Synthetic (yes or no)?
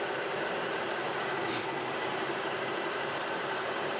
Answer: yes